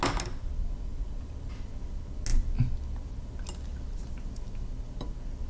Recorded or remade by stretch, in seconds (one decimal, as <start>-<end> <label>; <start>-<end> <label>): 0.0-0.9 recorded; 0.9-1.5 remade; 1.5-5.5 recorded